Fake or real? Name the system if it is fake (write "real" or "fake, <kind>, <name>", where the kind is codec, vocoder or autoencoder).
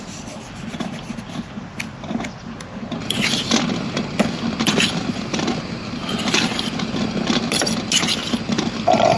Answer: real